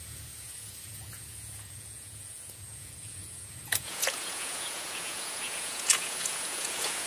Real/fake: fake